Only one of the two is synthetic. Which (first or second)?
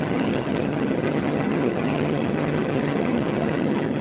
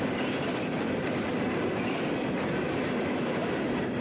first